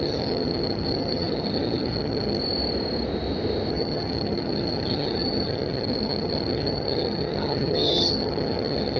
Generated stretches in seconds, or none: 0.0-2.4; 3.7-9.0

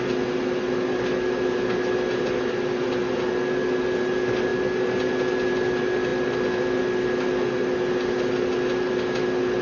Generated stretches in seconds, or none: none

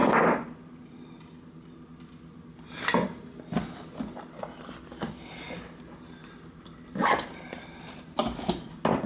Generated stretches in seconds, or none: none

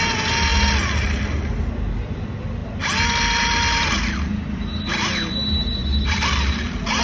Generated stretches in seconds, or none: none

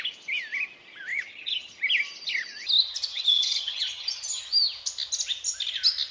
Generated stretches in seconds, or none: 1.1-1.8; 3.1-4.4

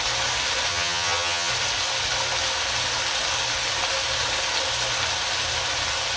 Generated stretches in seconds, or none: 0.7-1.5